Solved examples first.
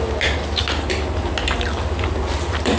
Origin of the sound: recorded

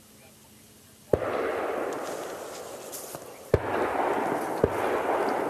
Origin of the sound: recorded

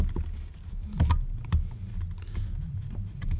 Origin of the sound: recorded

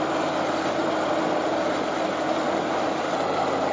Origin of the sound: recorded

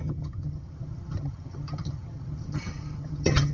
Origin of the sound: remade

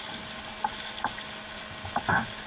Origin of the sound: recorded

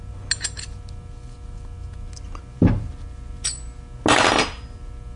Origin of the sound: recorded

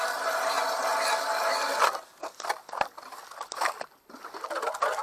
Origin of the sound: recorded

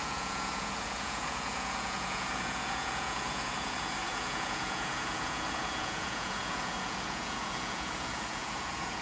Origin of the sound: remade